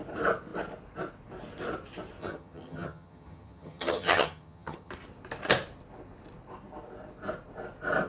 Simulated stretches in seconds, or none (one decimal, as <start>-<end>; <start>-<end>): 2.2-4.9